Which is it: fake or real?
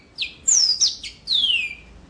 real